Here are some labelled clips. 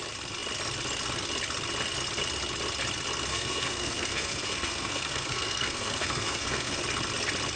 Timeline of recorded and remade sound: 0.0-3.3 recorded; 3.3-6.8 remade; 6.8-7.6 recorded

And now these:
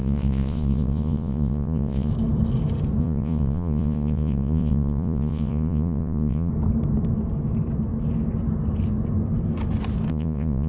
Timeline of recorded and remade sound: 0.0-2.1 remade; 2.1-3.0 recorded; 3.0-6.5 remade; 6.5-10.1 recorded; 10.1-10.7 remade

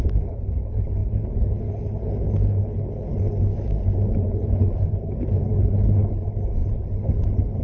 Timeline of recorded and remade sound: 0.0-3.5 remade; 3.5-4.1 recorded; 4.1-7.6 remade

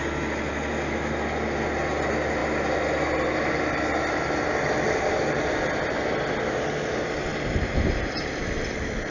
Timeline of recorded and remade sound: 0.0-9.1 recorded

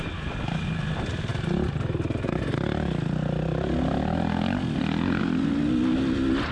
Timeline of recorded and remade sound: 0.0-6.5 recorded

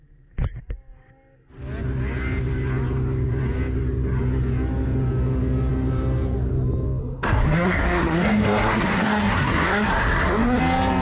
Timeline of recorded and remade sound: 0.0-7.0 recorded; 7.0-10.6 remade; 10.6-11.0 recorded